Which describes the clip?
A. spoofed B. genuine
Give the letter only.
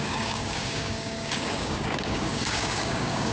A